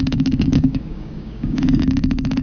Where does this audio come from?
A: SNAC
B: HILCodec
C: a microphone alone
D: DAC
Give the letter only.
D